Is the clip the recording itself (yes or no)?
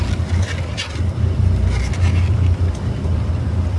yes